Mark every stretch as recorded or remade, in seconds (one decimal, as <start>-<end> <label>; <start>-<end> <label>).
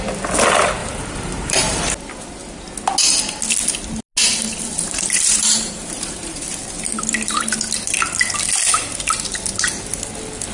0.0-0.8 recorded; 0.8-1.9 remade; 1.9-4.2 recorded; 4.2-6.4 remade; 6.4-10.5 recorded